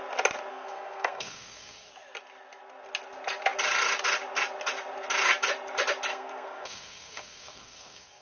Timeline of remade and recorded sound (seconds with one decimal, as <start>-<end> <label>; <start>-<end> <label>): 0.0-0.5 recorded; 0.5-1.9 remade; 1.9-6.1 recorded; 6.1-8.2 remade

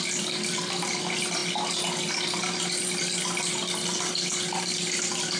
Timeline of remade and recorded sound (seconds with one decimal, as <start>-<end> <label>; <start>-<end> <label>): 0.0-5.4 recorded

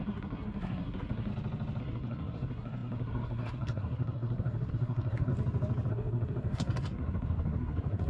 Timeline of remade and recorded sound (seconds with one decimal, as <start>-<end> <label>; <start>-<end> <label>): 0.0-1.3 remade; 1.3-1.8 recorded; 1.8-5.3 remade; 5.3-5.9 recorded; 5.9-8.1 remade

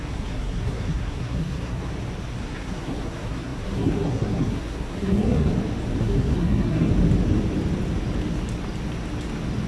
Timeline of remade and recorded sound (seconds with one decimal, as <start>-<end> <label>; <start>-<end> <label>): 0.0-1.9 remade; 1.9-2.4 recorded; 2.4-5.5 remade; 5.5-6.0 recorded; 6.0-6.9 remade; 6.9-9.7 recorded

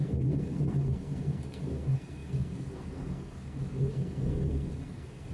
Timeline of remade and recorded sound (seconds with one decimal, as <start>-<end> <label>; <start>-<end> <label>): 0.0-5.3 remade

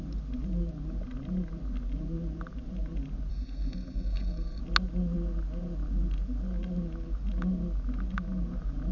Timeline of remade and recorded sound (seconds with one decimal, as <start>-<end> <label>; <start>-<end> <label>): 0.0-3.3 recorded; 3.3-4.6 remade; 4.6-8.9 recorded

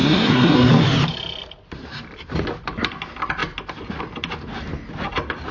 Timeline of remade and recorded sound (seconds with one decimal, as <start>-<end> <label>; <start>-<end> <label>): 0.0-0.7 remade; 0.7-5.5 recorded

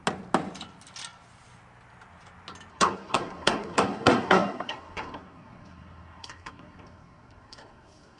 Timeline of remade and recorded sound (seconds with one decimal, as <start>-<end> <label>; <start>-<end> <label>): 0.0-2.7 recorded; 2.7-8.2 remade